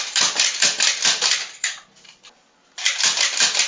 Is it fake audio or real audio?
real